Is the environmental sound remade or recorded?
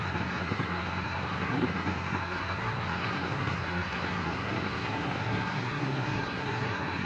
remade